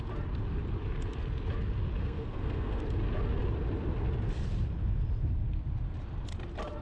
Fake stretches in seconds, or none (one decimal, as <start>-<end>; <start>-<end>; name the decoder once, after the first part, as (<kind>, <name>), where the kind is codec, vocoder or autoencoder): 2.0-2.8 (codec, SNAC)